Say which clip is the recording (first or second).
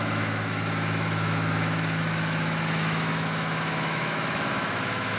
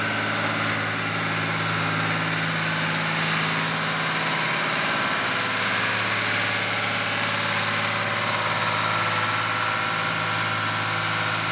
second